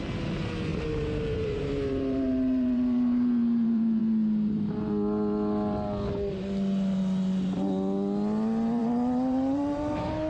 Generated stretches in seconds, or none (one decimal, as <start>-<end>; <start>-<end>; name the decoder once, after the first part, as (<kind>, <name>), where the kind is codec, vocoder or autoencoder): 0.7-4.0 (vocoder, BigVGAN v2); 8.8-10.3